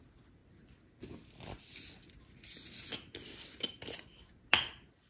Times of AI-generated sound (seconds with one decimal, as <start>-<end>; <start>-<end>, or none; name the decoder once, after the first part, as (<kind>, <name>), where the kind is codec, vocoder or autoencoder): none